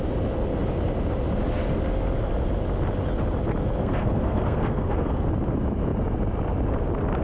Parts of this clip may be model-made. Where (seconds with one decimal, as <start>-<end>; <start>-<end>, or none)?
3.8-5.3